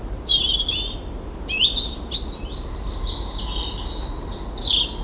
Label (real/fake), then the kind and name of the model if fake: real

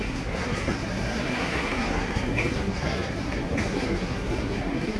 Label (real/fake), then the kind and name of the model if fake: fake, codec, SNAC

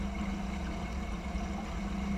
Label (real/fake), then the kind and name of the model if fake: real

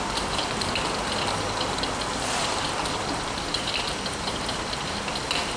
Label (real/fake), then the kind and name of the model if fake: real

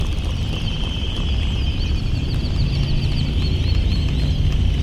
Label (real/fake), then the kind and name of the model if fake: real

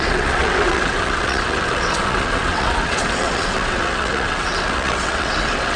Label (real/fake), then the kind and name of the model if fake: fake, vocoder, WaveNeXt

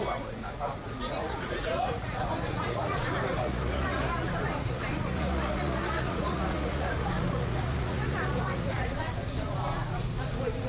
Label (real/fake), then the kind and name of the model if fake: fake, vocoder, Vocos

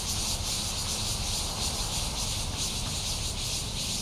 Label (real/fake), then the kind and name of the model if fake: real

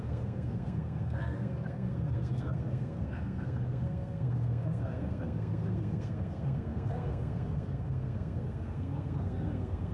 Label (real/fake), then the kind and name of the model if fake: fake, codec, SNAC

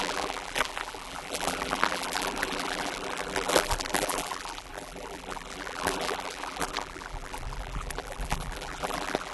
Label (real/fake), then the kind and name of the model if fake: fake, vocoder, BigVGAN v2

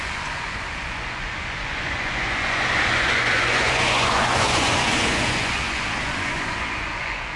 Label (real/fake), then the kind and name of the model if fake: fake, vocoder, Vocos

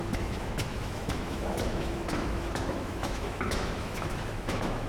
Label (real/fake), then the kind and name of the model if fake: fake, autoencoder, DAC-VAE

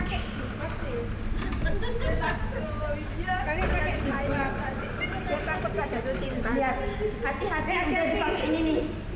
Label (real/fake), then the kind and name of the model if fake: real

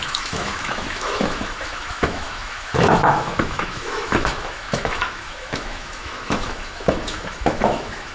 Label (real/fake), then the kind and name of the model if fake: fake, autoencoder, DAC-VAE